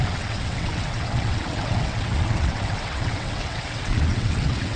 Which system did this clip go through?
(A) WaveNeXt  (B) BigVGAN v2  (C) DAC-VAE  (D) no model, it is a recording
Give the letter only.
A